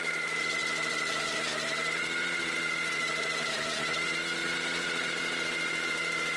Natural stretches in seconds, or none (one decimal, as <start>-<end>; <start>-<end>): 0.6-1.1

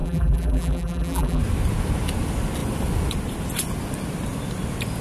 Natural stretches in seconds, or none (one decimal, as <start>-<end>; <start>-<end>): 1.4-5.0

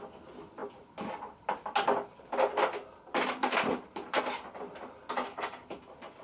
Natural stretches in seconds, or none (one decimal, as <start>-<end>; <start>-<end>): 0.0-3.4; 4.2-6.2